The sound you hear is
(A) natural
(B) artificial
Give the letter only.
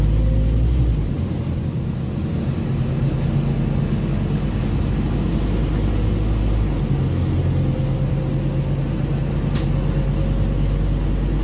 A